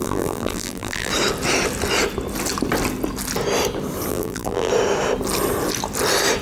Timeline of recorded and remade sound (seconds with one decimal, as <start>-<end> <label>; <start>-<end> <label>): 0.0-1.1 remade; 1.1-4.1 recorded; 4.1-4.7 remade; 4.7-6.4 recorded